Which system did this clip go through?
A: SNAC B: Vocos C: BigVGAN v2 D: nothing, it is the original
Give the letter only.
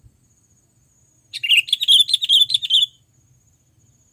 D